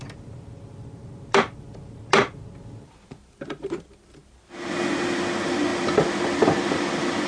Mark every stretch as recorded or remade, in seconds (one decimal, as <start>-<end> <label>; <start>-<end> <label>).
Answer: 0.0-7.3 recorded